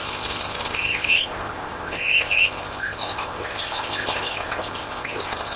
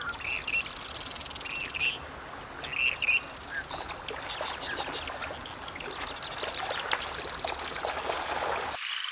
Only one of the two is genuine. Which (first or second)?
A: second